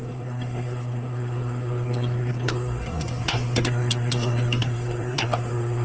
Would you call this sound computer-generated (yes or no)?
yes